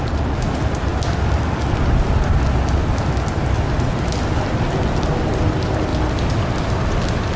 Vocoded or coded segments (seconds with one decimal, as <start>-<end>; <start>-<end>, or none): none

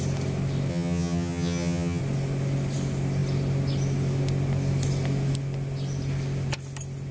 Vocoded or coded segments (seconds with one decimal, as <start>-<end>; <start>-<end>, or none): 0.7-2.0

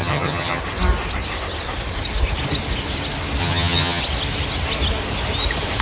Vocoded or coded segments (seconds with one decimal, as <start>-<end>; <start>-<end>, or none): 0.0-0.6; 3.4-4.0

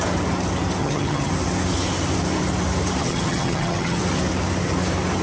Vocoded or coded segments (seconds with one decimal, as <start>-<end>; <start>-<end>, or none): 0.8-1.3; 3.0-4.0

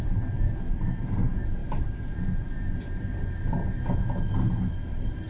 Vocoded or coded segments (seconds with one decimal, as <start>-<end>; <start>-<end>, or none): none

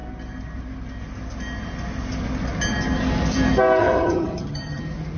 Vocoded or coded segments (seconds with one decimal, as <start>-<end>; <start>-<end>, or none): 3.8-4.8

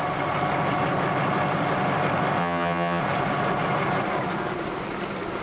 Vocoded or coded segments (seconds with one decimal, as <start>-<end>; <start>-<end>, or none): 2.4-3.0

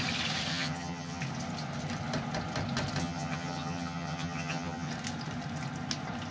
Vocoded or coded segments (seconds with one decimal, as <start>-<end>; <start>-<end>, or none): 0.5-1.2; 3.0-4.9